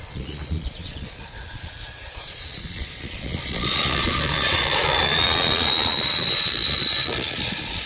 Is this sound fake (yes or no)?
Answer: yes